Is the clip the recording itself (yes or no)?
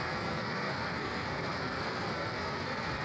no